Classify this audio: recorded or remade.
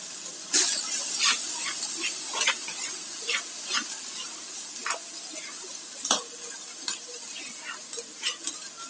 remade